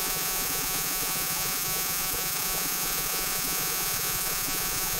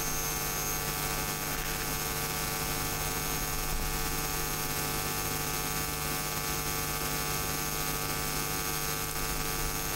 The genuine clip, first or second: second